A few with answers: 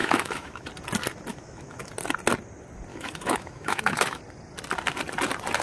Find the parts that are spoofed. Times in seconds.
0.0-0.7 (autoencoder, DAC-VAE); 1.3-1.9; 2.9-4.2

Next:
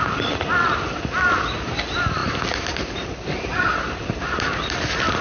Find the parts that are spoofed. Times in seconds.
none

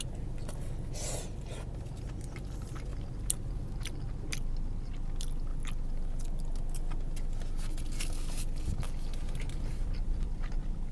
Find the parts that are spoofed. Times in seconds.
none

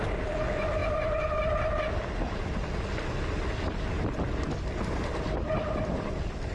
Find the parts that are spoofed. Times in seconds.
none

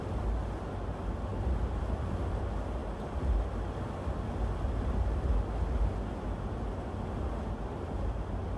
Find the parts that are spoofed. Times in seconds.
none

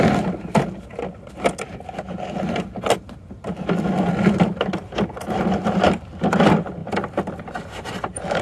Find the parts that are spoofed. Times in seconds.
none

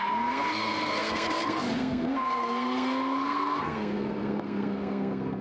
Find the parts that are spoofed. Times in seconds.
0.0-5.4 (codec, SNAC)

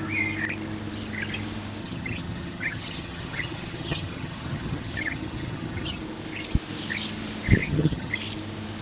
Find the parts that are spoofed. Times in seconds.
1.8-6.0 (vocoder, HiFi-GAN); 7.6-8.1